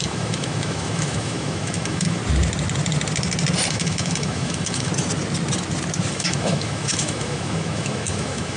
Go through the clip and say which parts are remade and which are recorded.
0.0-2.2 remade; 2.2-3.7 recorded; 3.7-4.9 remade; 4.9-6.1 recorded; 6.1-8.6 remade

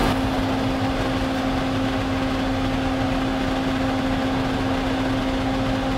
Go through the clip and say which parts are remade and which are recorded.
0.0-6.0 recorded

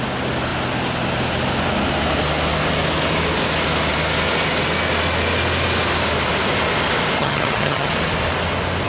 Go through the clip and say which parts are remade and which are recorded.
0.0-7.2 recorded; 7.2-7.9 remade; 7.9-8.9 recorded

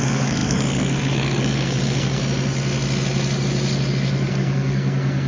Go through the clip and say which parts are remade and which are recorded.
0.0-2.2 remade; 2.2-4.3 recorded; 4.3-5.3 remade

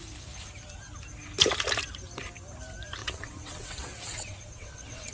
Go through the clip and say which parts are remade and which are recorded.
0.0-3.0 recorded; 3.0-5.1 remade

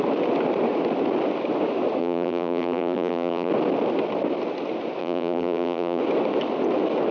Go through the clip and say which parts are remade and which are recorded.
0.0-2.0 recorded; 2.0-3.5 remade; 3.5-5.0 recorded; 5.0-6.0 remade; 6.0-7.1 recorded